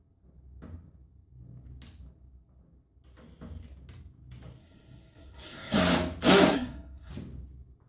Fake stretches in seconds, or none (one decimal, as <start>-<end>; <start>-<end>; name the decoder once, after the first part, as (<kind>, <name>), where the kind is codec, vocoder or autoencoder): 4.6-5.8 (codec, SNAC); 6.5-7.1